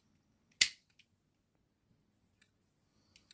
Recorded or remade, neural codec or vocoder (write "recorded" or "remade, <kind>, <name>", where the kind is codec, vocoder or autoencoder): recorded